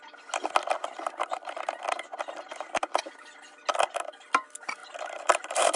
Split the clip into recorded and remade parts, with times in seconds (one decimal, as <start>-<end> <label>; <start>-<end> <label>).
0.0-0.8 recorded; 0.8-1.9 remade; 1.9-4.8 recorded; 4.8-5.8 remade

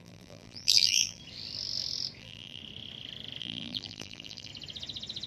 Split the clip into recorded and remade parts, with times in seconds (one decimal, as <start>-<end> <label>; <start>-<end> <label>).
0.0-1.2 remade; 1.2-2.2 recorded; 2.2-2.6 remade; 2.6-3.4 recorded; 3.4-4.5 remade; 4.5-5.3 recorded

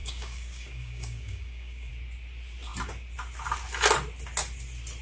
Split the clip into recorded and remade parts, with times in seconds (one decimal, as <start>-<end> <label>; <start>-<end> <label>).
0.0-1.9 remade; 1.9-5.0 recorded

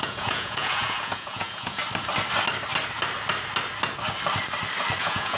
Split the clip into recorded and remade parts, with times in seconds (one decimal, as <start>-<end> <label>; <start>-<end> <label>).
0.0-1.8 remade; 1.8-5.0 recorded; 5.0-5.4 remade

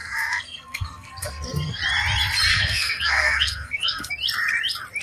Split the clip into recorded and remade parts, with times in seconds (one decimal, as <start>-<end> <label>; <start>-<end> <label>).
0.0-1.8 remade; 1.8-2.5 recorded; 2.5-4.1 remade; 4.1-5.0 recorded

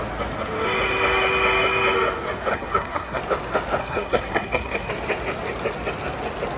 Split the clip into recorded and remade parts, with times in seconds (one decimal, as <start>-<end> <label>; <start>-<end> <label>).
0.0-2.5 recorded; 2.5-3.2 remade; 3.2-3.8 recorded; 3.8-4.9 remade; 4.9-6.6 recorded

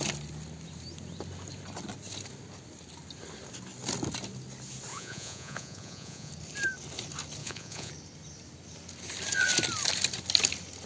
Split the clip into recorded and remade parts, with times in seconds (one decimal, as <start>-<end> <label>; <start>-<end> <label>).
0.0-4.9 recorded; 4.9-6.3 remade; 6.3-7.4 recorded; 7.4-7.9 remade; 7.9-10.9 recorded